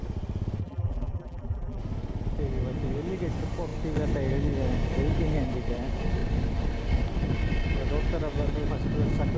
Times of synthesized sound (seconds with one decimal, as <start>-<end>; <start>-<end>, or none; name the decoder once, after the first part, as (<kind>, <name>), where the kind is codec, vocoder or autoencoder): 0.6-1.8 (vocoder, BigVGAN v2)